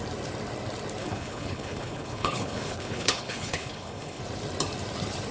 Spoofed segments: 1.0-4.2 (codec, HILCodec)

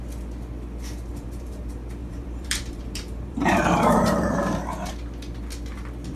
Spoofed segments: 1.1-1.6 (vocoder, BigVGAN v2); 2.0-4.9